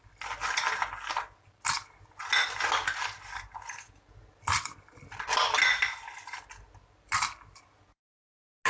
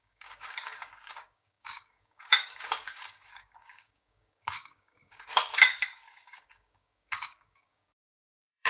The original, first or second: first